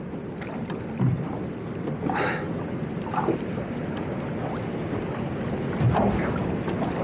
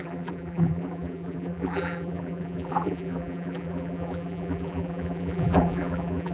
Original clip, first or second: first